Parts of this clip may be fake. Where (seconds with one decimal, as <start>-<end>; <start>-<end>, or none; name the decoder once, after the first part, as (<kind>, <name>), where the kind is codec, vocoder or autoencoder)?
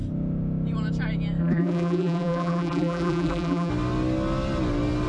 1.4-3.7 (vocoder, BigVGAN v2)